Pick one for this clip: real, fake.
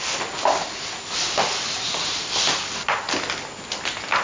real